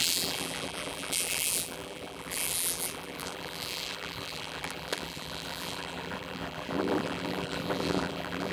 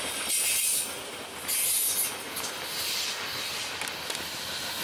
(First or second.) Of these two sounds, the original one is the second